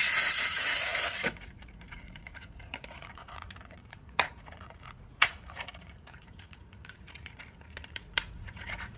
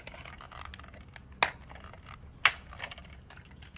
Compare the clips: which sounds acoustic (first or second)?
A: second